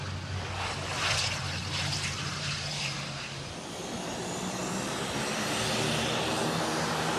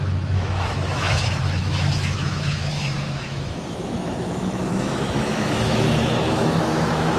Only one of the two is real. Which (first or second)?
first